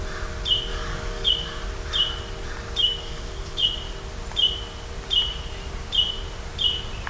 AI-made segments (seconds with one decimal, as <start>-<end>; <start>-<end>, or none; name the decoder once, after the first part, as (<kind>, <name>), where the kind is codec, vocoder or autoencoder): 0.7-1.3 (codec, DAC); 2.8-3.7